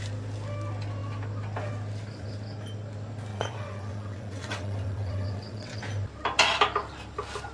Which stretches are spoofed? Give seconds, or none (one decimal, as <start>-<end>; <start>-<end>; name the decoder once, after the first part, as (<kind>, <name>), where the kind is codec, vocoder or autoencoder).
3.3-5.8 (vocoder, WaveNeXt)